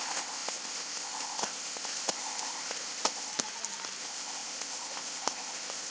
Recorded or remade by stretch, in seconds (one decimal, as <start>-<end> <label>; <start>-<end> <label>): 0.0-3.3 remade; 3.3-4.0 recorded; 4.0-5.9 remade